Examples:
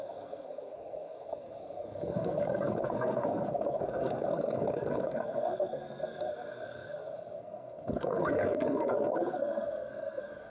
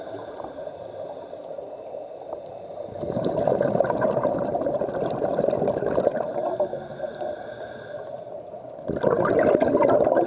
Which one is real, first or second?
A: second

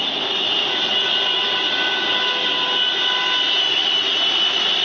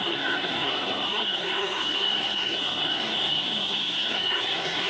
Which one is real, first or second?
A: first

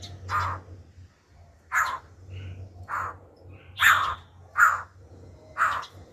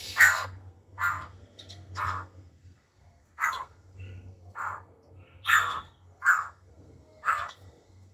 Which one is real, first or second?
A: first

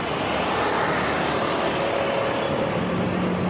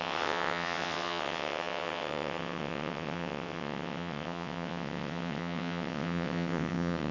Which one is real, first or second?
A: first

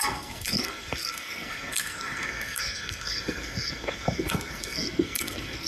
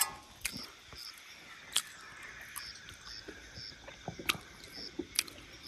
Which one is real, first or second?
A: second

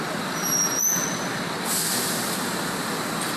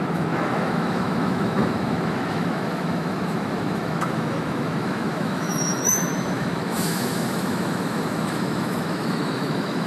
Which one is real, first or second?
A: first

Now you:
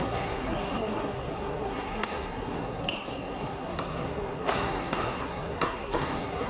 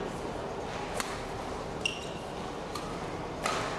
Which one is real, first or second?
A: second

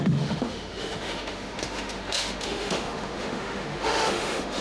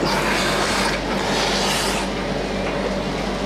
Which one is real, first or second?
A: second